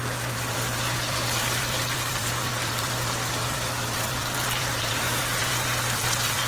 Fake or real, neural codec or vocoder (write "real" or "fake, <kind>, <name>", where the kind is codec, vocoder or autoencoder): fake, vocoder, BigVGAN v2